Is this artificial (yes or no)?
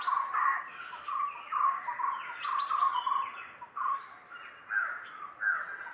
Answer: no